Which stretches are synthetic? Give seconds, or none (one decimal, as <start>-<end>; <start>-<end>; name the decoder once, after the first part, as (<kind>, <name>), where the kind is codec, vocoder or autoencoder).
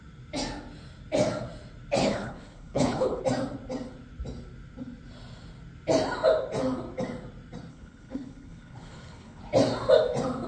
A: 2.0-3.2 (codec, HILCodec); 7.7-9.4